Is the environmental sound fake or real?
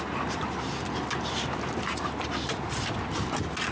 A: real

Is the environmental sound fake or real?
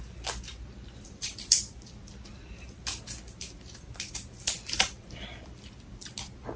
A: real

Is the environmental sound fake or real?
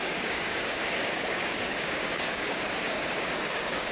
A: fake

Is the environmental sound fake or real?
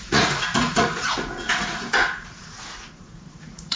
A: fake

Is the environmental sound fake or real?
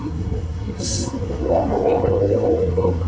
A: fake